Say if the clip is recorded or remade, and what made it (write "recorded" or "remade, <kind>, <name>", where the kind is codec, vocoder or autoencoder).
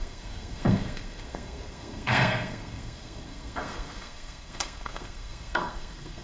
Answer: remade, codec, SNAC